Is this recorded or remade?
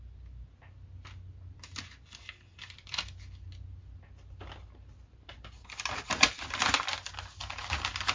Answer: recorded